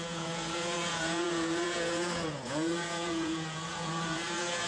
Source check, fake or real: fake